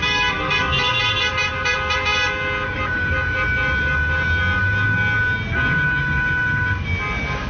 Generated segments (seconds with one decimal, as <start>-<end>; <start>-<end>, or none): none